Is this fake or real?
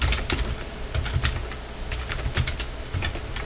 real